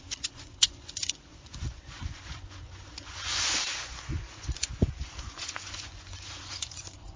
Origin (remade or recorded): remade